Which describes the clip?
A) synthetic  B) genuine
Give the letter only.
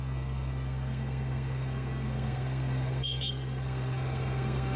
A